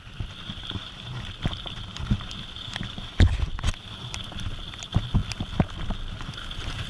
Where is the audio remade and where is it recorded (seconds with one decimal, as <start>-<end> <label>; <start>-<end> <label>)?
0.0-6.9 recorded